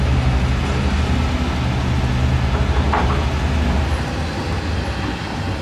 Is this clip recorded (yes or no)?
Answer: yes